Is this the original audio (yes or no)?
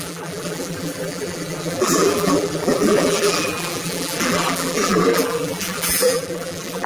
no